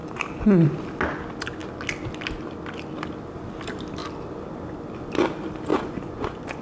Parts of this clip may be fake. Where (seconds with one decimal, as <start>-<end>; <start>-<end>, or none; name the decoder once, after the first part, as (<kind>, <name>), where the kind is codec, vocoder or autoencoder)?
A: 5.7-6.6 (vocoder, Vocos)